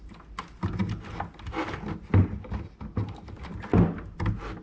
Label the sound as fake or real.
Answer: real